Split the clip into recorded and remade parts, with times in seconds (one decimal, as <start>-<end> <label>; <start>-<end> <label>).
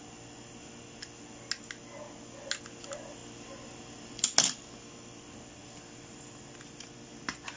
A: 0.0-7.6 recorded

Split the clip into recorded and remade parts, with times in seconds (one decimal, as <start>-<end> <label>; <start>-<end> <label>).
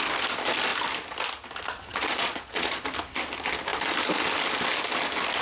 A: 0.0-1.9 recorded; 1.9-2.8 remade; 2.8-5.4 recorded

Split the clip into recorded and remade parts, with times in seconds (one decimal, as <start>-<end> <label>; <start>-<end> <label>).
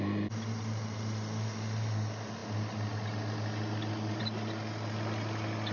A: 0.0-5.7 recorded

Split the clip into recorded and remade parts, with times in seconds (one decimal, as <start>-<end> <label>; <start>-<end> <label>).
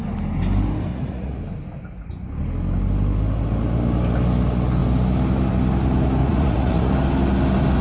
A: 0.0-0.9 recorded; 0.9-1.4 remade; 1.4-6.2 recorded; 6.2-6.9 remade; 6.9-7.8 recorded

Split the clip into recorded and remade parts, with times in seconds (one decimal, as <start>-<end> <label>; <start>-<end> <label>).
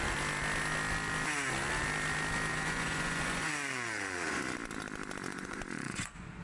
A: 0.0-2.5 recorded; 2.5-4.4 remade; 4.4-5.3 recorded; 5.3-6.4 remade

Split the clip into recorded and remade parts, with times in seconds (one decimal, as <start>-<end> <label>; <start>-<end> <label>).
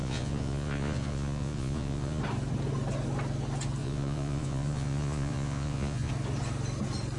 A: 0.0-2.2 remade; 2.2-3.8 recorded; 3.8-6.1 remade; 6.1-7.2 recorded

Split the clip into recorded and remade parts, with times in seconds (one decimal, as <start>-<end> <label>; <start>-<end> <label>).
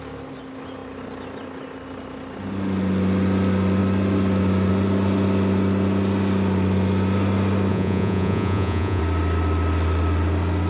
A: 0.0-7.7 recorded; 7.7-9.0 remade; 9.0-10.7 recorded